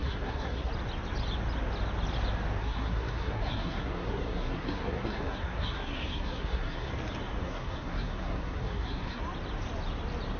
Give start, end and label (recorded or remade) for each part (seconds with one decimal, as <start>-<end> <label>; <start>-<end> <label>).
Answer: 0.0-0.7 remade; 0.7-2.6 recorded; 2.6-6.9 remade; 6.9-7.4 recorded; 7.4-9.2 remade; 9.2-10.4 recorded